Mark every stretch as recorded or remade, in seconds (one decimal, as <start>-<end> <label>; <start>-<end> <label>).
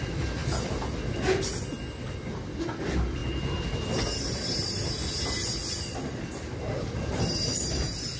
0.0-8.2 recorded